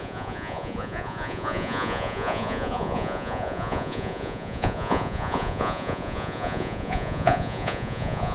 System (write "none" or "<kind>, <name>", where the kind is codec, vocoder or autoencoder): vocoder, Vocos